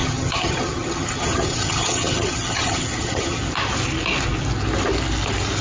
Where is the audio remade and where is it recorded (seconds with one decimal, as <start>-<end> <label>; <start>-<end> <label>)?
0.0-3.4 remade; 3.4-5.6 recorded